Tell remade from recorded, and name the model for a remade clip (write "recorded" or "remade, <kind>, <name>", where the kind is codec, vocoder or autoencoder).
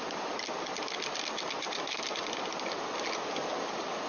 recorded